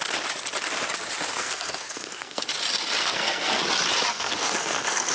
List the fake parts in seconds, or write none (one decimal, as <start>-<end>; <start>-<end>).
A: 1.3-2.6; 3.0-3.6; 4.1-5.1